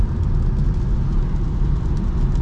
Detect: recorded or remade recorded